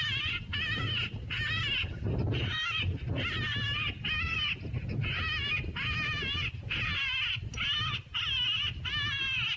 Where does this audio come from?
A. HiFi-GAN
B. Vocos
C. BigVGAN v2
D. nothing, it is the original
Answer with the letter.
D